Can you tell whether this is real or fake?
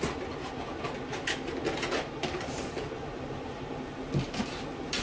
real